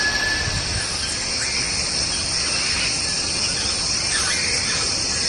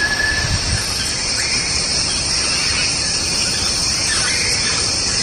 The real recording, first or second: first